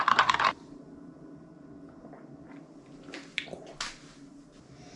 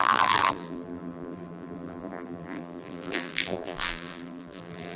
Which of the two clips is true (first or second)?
first